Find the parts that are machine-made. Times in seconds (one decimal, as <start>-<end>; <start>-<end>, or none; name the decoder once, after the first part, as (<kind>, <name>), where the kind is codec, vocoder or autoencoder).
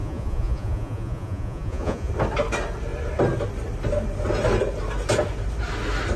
0.0-2.1 (vocoder, Vocos)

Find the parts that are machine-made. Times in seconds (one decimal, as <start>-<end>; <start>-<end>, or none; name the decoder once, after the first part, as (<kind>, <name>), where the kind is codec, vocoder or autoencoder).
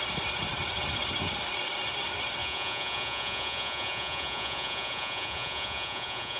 2.4-6.4 (vocoder, Vocos)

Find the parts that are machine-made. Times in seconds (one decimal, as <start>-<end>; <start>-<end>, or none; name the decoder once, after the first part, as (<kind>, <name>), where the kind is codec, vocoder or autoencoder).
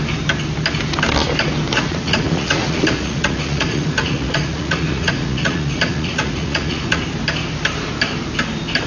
1.7-7.0 (vocoder, Vocos)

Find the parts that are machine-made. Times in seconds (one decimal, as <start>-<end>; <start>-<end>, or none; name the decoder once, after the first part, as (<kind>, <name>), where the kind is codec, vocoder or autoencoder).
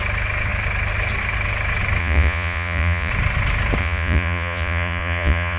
2.0-3.1 (vocoder, Vocos); 3.8-5.6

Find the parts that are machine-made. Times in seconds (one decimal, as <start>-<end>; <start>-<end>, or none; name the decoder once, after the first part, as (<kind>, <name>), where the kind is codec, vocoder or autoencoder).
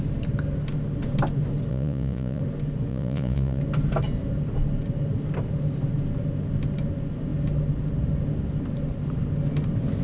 1.7-2.4 (vocoder, Vocos); 2.9-3.6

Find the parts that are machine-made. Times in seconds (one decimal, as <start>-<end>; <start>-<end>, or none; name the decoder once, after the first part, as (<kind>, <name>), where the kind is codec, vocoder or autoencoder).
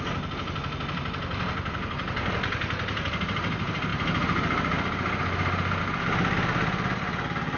none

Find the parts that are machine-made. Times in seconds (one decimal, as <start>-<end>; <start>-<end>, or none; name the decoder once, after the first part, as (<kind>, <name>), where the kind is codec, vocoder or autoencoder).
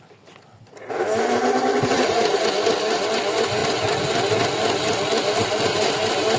1.7-2.5 (vocoder, Vocos)